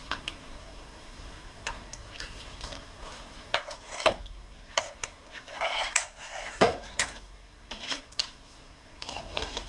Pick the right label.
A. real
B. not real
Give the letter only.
B